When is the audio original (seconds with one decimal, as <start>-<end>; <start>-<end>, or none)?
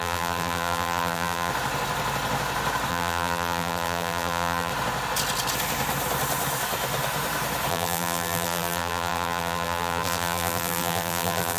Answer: 1.5-2.9; 4.7-7.7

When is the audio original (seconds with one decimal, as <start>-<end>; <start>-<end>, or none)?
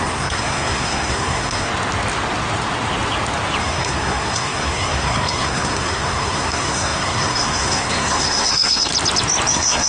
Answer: 1.7-3.6; 8.9-9.5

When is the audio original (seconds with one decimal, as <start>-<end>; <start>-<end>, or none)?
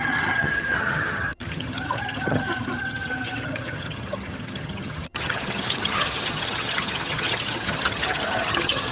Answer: none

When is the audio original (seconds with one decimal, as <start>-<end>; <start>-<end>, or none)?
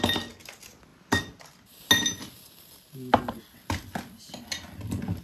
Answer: 0.0-5.2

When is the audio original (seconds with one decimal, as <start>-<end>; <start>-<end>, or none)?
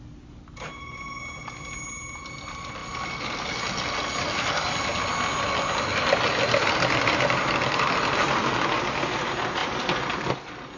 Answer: 0.0-10.8